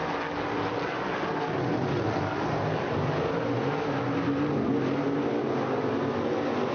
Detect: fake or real real